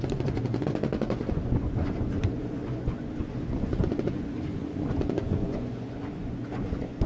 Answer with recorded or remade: remade